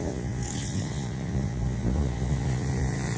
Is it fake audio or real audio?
fake